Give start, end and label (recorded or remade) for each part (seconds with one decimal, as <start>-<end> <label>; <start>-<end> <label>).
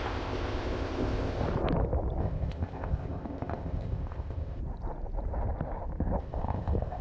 0.0-1.4 remade; 1.4-2.2 recorded; 2.2-4.6 remade; 4.6-6.2 recorded; 6.2-7.0 remade